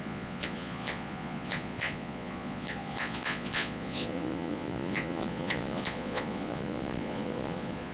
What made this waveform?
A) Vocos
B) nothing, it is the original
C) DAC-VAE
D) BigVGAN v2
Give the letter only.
A